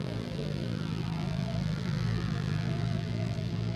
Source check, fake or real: fake